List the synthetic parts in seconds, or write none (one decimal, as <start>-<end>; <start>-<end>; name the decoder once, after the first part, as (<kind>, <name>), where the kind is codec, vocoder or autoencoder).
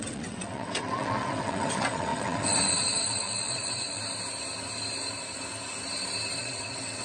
0.0-4.0 (vocoder, WaveNeXt); 6.4-7.0